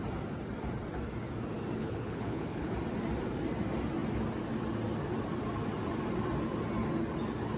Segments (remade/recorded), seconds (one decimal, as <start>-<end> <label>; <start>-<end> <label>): 0.0-1.8 recorded; 1.8-2.7 remade; 2.7-7.6 recorded